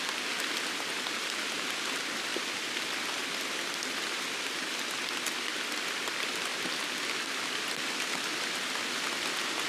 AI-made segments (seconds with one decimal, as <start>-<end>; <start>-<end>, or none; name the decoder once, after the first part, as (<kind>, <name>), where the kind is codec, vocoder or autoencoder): none